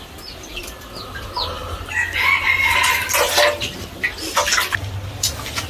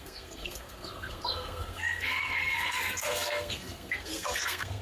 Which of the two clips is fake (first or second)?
second